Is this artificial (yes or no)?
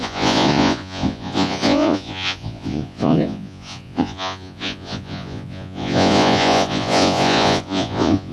yes